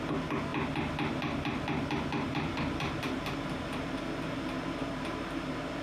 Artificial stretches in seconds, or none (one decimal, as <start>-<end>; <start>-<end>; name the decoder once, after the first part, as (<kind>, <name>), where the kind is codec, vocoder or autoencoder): 0.5-4.0 (vocoder, BigVGAN v2)